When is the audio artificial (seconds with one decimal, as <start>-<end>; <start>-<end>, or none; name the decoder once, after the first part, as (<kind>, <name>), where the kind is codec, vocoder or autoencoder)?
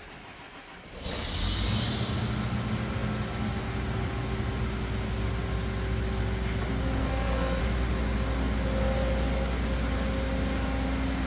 7.0-7.6 (codec, SNAC)